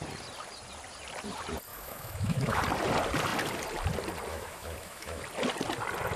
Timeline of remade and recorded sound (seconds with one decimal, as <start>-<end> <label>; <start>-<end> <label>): 0.0-1.7 recorded; 1.7-2.6 remade; 2.6-4.3 recorded; 4.3-5.2 remade; 5.2-6.2 recorded